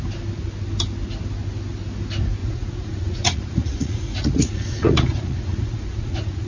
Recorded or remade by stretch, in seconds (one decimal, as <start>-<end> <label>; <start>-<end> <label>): 0.0-2.4 recorded; 2.4-6.5 remade